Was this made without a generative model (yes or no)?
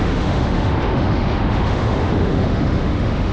no